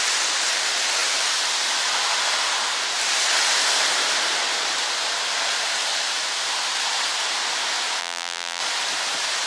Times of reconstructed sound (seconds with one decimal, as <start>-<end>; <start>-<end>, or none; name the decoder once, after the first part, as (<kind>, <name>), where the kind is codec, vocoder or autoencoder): 8.0-8.6 (vocoder, BigVGAN v2)